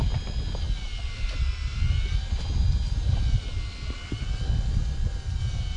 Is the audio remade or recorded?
recorded